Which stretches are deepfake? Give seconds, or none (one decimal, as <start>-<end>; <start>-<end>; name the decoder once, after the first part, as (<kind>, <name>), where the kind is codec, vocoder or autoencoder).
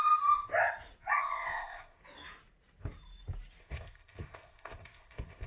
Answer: 1.2-2.0 (codec, ZipCodec); 3.6-5.5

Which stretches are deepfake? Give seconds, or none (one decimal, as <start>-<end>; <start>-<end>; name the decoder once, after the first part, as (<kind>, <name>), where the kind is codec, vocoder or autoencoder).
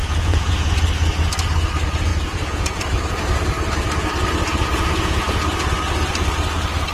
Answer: 0.0-0.7 (vocoder, Vocos); 2.1-2.8; 4.5-5.7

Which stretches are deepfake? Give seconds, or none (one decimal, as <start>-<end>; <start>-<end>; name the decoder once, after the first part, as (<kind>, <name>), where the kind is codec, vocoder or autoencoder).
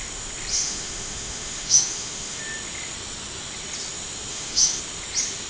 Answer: 0.5-2.4 (autoencoder, DAC-VAE); 4.3-4.8